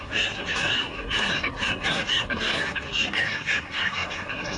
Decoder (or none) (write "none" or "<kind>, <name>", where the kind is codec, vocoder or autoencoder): codec, SNAC